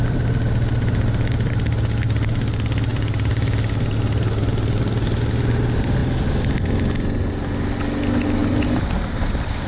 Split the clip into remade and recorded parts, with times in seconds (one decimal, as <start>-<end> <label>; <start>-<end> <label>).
0.0-9.7 recorded